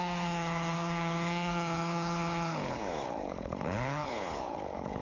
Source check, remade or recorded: remade